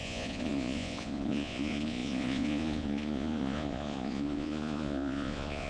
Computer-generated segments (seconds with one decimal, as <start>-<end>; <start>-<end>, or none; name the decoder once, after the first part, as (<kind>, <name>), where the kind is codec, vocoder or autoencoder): 0.0-5.7 (vocoder, Vocos)